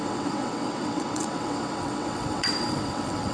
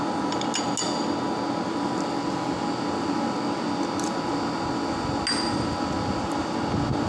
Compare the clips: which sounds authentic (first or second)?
second